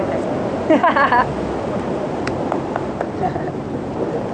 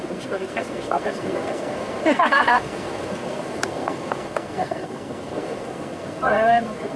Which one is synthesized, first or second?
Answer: second